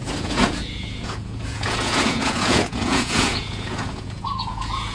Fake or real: fake